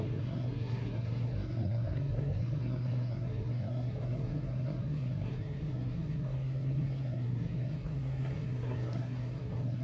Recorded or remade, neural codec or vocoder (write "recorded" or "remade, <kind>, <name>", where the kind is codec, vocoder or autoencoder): remade, codec, SNAC